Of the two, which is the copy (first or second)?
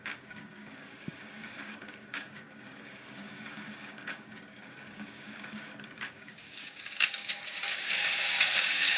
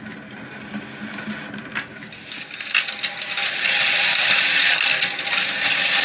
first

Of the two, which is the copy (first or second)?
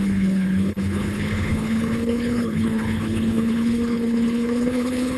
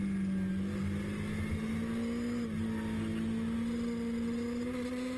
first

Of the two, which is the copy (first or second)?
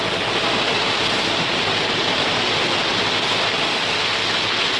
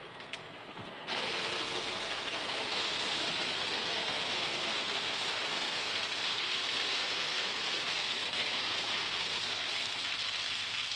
second